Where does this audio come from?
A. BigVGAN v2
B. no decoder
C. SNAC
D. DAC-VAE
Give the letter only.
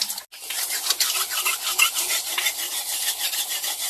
B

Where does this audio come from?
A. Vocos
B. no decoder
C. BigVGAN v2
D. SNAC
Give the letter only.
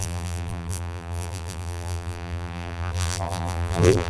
C